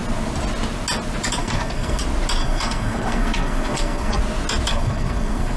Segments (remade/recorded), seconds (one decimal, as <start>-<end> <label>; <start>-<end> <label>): 0.0-1.4 recorded; 1.4-2.0 remade; 2.0-2.4 recorded; 2.4-4.2 remade; 4.2-4.7 recorded; 4.7-5.6 remade